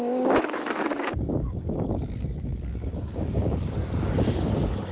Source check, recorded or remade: remade